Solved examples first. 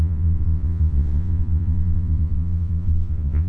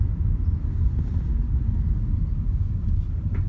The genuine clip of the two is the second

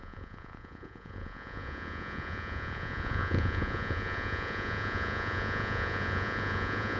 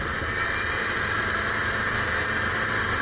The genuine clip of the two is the second